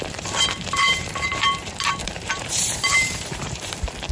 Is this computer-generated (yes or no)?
yes